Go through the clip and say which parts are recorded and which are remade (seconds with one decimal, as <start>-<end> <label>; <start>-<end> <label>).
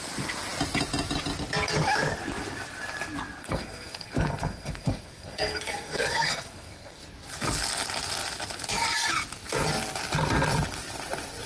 0.0-3.4 recorded; 3.4-7.0 remade; 7.0-11.5 recorded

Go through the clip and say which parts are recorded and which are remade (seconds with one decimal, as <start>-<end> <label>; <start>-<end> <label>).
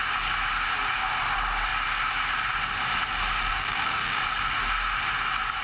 0.0-3.5 recorded; 3.5-4.2 remade; 4.2-5.6 recorded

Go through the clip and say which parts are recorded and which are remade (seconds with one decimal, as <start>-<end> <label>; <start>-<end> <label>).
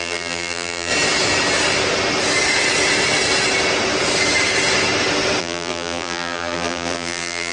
0.0-0.9 remade; 0.9-5.4 recorded; 5.4-7.5 remade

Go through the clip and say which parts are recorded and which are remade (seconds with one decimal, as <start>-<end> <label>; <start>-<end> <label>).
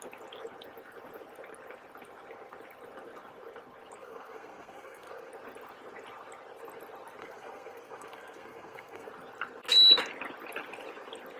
0.0-4.0 recorded; 4.0-5.3 remade; 5.3-7.2 recorded; 7.2-9.1 remade; 9.1-11.4 recorded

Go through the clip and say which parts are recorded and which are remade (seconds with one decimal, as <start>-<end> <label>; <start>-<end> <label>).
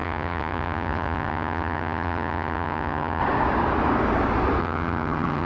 0.0-3.2 remade; 3.2-4.6 recorded; 4.6-5.5 remade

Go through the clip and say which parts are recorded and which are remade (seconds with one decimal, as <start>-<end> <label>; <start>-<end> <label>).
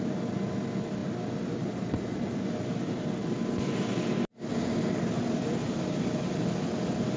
0.0-7.2 recorded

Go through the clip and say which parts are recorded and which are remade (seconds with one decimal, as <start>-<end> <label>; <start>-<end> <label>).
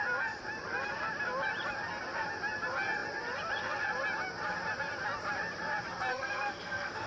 0.0-6.1 recorded; 6.1-7.1 remade